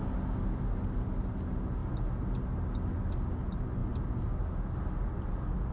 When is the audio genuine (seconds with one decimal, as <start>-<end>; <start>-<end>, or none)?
0.0-5.7

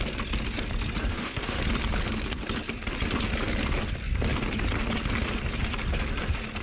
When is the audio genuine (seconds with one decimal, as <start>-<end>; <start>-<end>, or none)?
0.0-1.1; 1.6-6.6

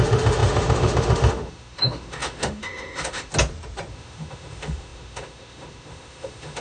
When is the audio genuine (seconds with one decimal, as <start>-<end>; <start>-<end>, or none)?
3.3-3.9

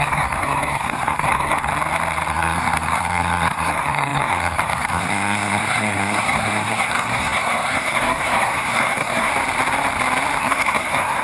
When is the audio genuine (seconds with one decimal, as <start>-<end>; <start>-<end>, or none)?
1.7-2.3; 9.3-10.4

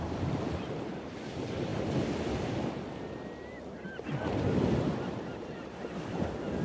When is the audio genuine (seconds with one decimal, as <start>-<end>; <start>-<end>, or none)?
0.0-6.6

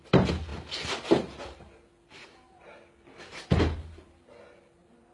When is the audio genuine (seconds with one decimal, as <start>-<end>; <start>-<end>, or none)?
0.0-5.1

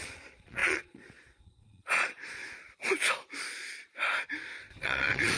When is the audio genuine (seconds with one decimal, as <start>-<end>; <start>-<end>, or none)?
2.4-4.8